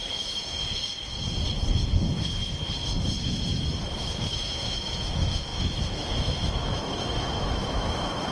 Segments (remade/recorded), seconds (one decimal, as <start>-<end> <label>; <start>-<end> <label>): 0.0-0.6 remade; 0.6-3.2 recorded; 3.2-8.3 remade